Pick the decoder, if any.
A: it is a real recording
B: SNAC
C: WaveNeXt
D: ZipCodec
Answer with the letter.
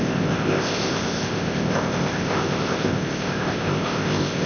D